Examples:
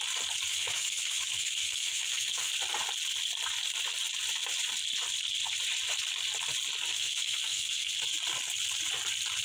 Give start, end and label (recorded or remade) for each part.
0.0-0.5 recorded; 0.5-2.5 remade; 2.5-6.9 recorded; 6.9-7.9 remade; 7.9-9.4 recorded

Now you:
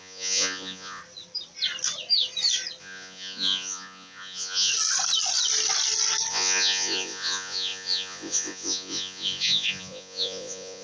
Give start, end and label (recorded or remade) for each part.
0.0-1.0 remade; 1.0-2.8 recorded; 2.8-4.7 remade; 4.7-6.3 recorded; 6.3-10.8 remade

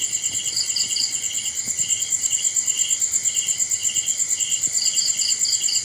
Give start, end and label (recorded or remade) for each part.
0.0-5.8 recorded

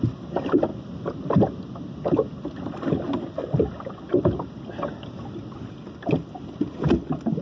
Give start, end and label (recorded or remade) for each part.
0.0-7.4 recorded

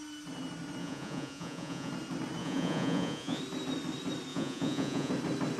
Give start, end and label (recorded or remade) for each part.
0.0-0.8 recorded; 0.8-1.9 remade; 1.9-2.4 recorded; 2.4-3.4 remade; 3.4-4.3 recorded; 4.3-5.1 remade; 5.1-5.6 recorded

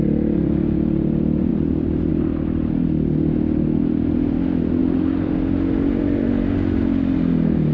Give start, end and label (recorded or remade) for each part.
0.0-1.5 recorded; 1.5-2.1 remade; 2.1-7.7 recorded

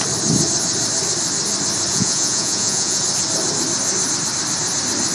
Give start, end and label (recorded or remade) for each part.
0.0-1.9 recorded; 1.9-3.0 remade; 3.0-5.1 recorded